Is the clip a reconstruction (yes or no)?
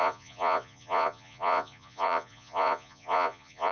yes